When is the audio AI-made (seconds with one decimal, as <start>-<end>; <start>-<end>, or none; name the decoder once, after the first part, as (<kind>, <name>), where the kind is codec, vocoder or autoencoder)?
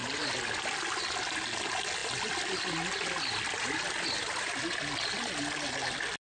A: none